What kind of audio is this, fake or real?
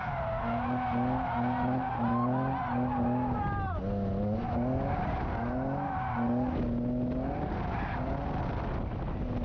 real